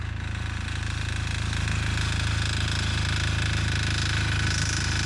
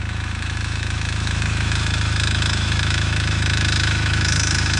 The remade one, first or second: second